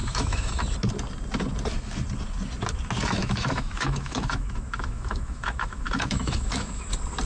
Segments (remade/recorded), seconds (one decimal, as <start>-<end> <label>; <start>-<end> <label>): 0.0-0.6 remade; 0.6-3.2 recorded; 3.2-6.8 remade; 6.8-7.2 recorded